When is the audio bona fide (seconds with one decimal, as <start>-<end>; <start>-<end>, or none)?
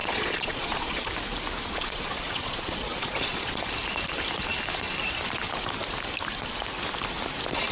1.1-1.6; 3.5-7.7